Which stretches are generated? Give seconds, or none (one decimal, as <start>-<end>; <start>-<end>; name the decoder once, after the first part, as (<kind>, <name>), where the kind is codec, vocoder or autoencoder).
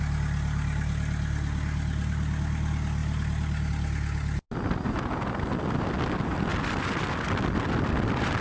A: none